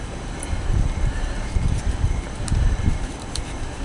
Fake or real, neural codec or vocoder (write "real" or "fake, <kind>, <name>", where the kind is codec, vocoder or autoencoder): fake, vocoder, BigVGAN v2